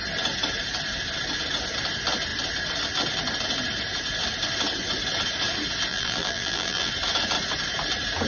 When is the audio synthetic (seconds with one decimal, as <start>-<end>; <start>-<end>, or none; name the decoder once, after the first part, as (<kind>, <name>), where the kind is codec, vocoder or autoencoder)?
5.9-6.9 (vocoder, BigVGAN v2)